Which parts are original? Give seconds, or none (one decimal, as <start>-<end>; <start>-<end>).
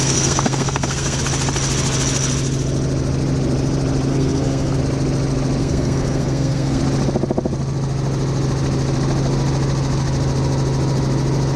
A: 1.2-4.1; 4.8-5.6; 6.8-11.6